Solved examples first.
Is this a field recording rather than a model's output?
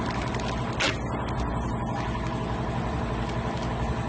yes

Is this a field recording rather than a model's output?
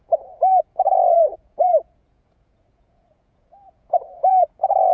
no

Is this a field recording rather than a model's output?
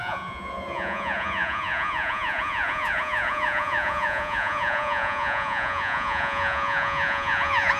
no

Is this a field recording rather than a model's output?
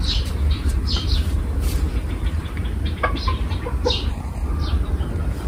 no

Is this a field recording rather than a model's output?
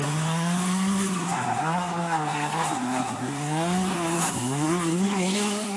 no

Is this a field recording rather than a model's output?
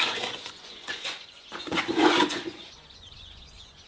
no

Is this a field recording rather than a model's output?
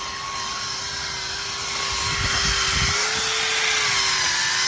yes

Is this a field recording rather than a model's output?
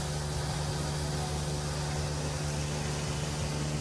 yes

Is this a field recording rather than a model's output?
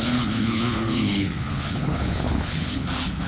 no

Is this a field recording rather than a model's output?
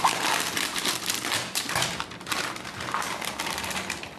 no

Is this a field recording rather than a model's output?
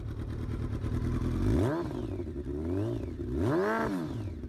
yes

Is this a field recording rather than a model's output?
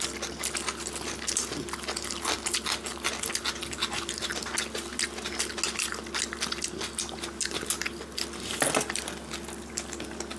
yes